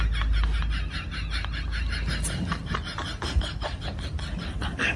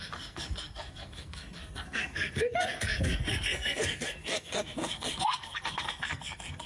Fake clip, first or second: second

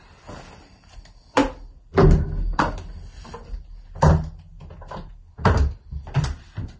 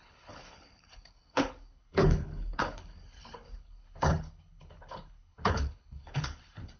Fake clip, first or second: second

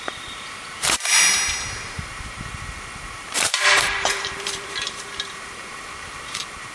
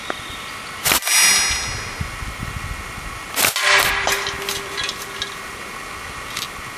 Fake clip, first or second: first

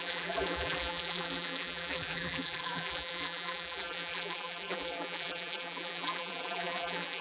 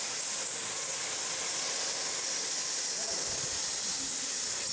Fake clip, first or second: first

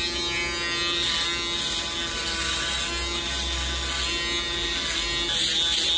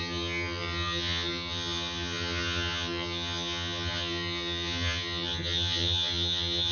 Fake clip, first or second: second